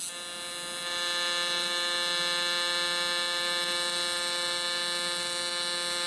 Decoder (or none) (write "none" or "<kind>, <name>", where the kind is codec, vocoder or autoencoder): none